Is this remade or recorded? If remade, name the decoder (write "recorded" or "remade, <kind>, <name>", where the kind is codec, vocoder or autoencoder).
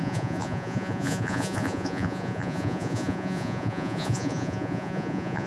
remade, vocoder, Vocos